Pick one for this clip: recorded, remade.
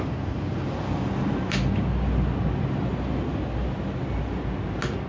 recorded